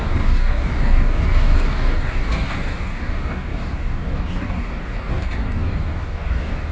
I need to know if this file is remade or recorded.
remade